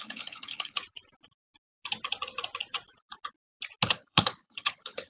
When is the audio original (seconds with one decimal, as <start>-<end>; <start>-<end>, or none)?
0.8-3.9